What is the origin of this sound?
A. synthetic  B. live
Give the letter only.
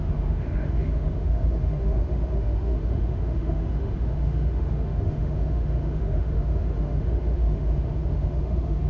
A